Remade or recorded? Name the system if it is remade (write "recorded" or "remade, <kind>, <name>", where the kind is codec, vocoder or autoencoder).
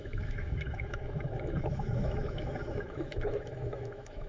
remade, autoencoder, DAC-VAE